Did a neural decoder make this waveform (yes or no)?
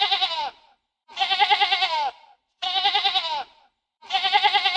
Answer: yes